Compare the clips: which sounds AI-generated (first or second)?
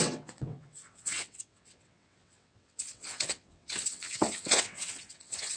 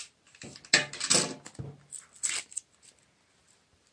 first